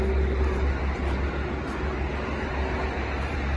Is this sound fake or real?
real